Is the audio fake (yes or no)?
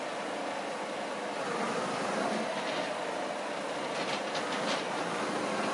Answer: no